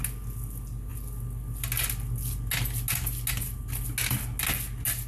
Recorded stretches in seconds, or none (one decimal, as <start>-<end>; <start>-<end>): 0.0-5.1